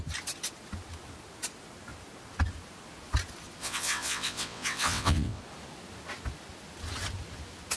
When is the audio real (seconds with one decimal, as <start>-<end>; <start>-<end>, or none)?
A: 0.0-3.6; 5.4-7.8